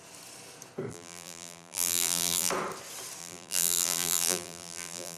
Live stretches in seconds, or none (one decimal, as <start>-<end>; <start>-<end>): 0.0-0.9; 2.5-3.2